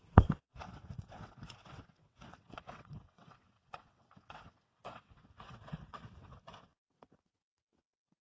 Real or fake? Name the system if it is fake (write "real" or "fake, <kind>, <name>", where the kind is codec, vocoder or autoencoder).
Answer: fake, vocoder, WaveNeXt